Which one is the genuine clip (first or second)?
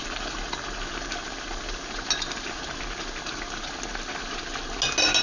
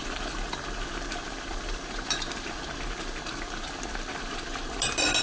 first